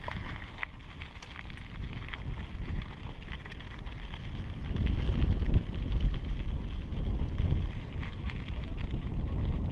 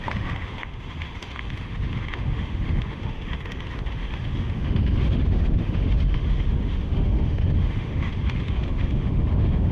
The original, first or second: first